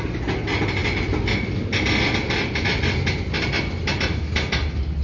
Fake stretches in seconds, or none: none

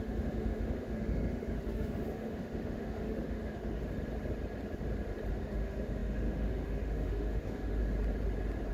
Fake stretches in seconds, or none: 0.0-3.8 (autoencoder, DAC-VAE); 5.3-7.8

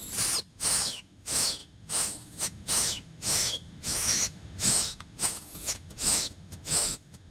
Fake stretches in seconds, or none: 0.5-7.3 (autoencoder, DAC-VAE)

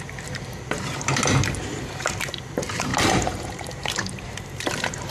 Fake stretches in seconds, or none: 2.9-5.1 (vocoder, BigVGAN v2)

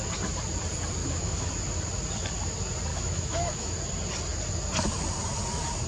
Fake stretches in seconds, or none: 1.0-1.5 (autoencoder, DAC-VAE); 2.9-3.8